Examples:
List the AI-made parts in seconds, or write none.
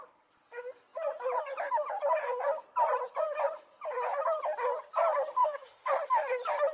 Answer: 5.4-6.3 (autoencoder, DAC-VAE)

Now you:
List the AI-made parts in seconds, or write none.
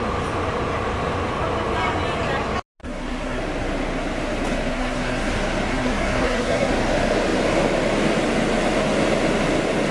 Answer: 2.8-3.4 (codec, SNAC); 4.7-5.3; 5.7-6.7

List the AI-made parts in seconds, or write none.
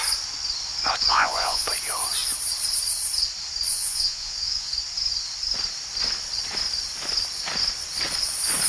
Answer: 1.1-1.7 (vocoder, Vocos); 3.7-4.7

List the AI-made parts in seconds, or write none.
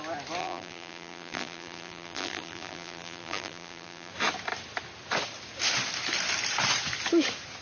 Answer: 0.4-4.1 (vocoder, BigVGAN v2)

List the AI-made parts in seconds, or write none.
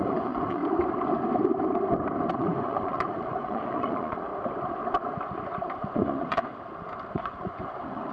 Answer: 0.0-0.6 (vocoder, Vocos); 2.3-4.3; 5.8-6.5; 7.1-8.1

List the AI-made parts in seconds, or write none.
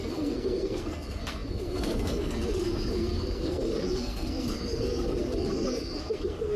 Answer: 0.0-6.6 (codec, SNAC)